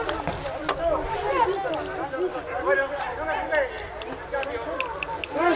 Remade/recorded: recorded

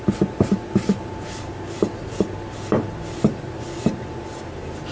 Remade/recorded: recorded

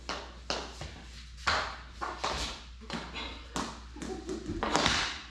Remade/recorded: recorded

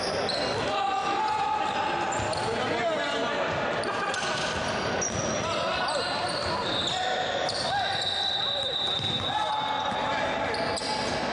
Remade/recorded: recorded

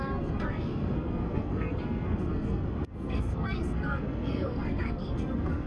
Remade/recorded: remade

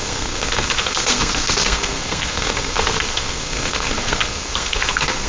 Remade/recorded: remade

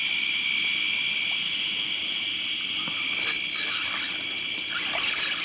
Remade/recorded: recorded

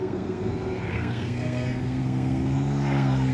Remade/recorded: remade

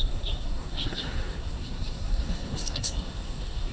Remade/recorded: remade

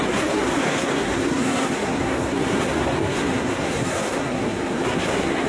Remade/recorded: remade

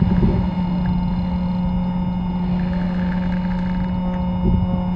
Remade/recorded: recorded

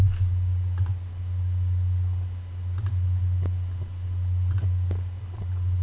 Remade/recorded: recorded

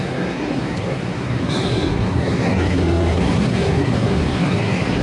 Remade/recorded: remade